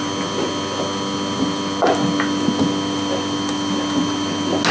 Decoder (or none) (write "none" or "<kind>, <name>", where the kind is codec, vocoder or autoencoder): none